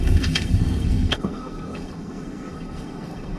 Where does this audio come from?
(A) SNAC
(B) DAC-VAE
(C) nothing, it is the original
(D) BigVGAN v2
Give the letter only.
A